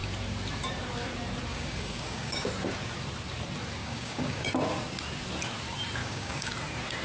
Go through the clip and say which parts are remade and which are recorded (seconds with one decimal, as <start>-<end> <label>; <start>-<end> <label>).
0.0-1.5 recorded; 1.5-2.5 remade; 2.5-3.8 recorded; 3.8-4.5 remade; 4.5-6.0 recorded; 6.0-6.5 remade; 6.5-7.0 recorded